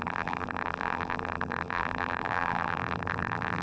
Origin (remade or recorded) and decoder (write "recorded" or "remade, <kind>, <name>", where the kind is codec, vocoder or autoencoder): remade, vocoder, BigVGAN v2